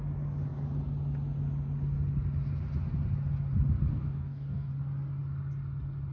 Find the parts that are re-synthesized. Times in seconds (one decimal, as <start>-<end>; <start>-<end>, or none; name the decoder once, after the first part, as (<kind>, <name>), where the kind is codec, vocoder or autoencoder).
3.9-4.7 (codec, DAC)